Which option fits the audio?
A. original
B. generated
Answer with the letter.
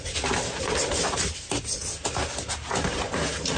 A